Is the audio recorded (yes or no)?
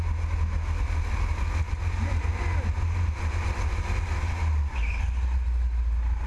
yes